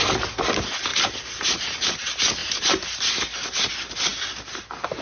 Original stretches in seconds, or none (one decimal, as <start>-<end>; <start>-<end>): 0.0-0.9; 2.0-2.4; 3.0-5.0

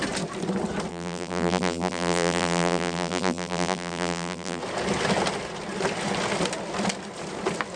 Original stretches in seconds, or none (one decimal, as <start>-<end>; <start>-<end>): 0.0-0.9; 4.6-7.8

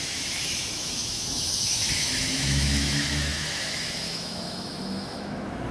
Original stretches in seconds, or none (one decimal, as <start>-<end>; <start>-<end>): none

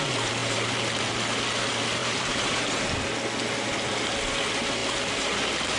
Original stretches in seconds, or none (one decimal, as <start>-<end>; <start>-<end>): 0.0-0.4; 1.0-2.0; 3.0-5.8

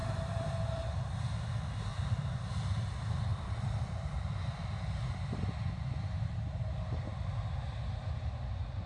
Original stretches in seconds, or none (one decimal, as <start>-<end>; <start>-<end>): 0.5-1.9; 2.5-3.3; 4.4-8.9

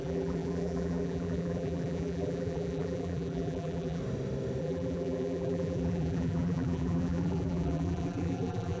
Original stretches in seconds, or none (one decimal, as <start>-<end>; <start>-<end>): 4.0-4.6

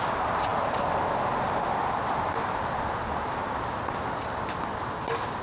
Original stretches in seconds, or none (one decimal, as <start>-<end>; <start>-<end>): 0.0-5.4